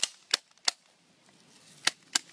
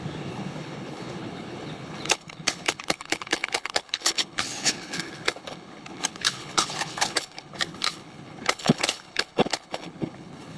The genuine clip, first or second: first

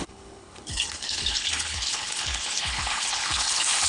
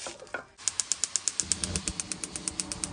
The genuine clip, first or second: second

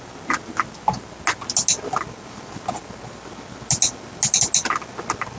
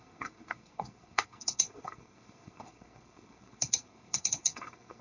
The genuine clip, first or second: first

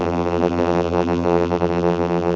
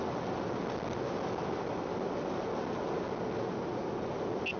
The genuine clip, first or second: second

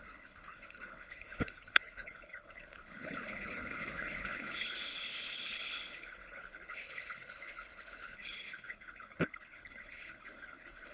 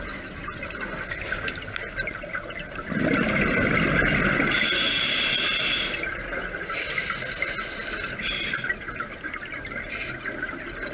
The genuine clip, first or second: second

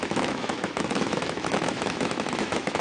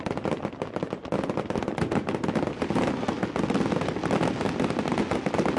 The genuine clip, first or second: second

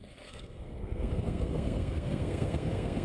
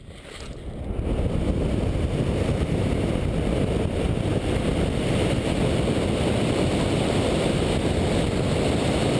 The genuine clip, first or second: second